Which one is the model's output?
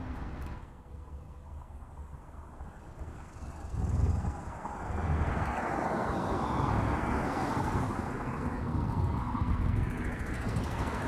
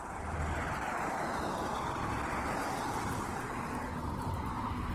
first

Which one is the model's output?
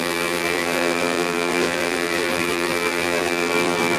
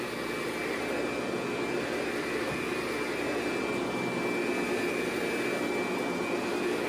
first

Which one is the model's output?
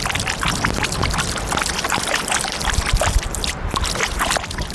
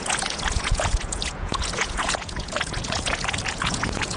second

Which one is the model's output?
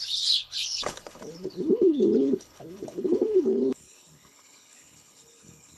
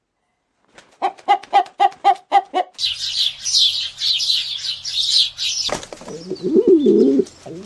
first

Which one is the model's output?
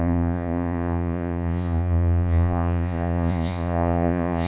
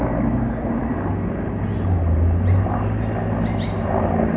first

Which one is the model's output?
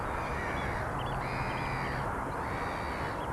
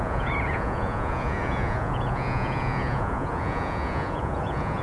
second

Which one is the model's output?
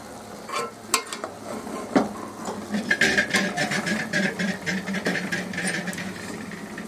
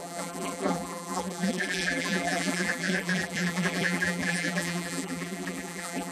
second